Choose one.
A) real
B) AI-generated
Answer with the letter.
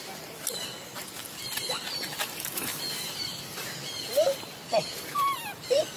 B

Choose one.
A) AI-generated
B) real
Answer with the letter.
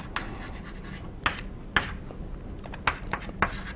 B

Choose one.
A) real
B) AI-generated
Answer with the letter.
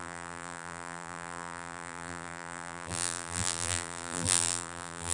B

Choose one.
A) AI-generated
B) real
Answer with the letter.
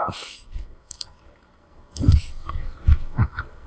A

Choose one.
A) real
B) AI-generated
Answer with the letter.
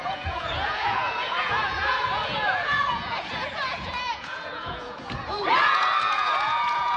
B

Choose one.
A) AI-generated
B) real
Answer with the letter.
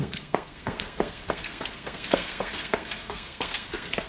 A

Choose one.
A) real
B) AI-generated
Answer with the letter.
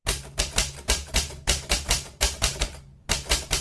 A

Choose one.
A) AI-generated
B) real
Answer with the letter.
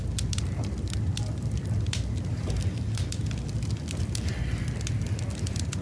A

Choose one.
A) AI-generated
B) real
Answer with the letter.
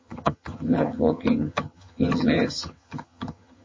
A